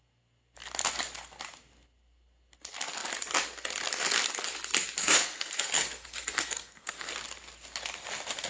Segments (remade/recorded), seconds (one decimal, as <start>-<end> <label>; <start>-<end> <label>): 0.0-5.0 recorded; 5.0-7.1 remade; 7.1-8.5 recorded